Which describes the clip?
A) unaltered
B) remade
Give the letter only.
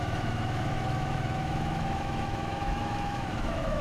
B